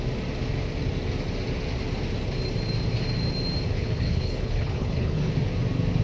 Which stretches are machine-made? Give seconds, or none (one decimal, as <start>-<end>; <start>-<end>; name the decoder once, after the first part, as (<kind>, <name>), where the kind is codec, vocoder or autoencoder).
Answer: 3.7-5.2 (codec, HILCodec)